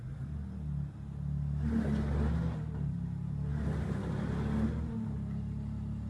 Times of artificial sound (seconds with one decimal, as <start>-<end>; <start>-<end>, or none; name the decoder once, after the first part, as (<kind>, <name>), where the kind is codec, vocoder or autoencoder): none